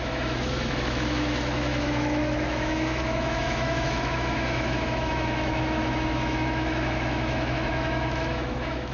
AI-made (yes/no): yes